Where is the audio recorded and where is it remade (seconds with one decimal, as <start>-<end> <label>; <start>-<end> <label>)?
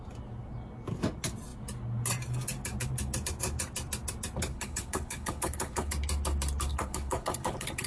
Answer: 0.0-4.5 recorded; 4.5-5.9 remade; 5.9-6.7 recorded; 6.7-7.9 remade